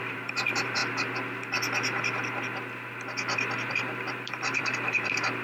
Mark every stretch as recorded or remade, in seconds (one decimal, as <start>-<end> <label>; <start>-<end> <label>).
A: 0.0-0.8 remade; 0.8-3.7 recorded; 3.7-5.4 remade